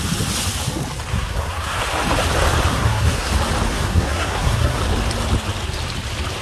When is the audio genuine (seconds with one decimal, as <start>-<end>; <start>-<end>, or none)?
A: 0.0-1.1; 1.8-2.7; 3.3-3.7; 4.8-6.4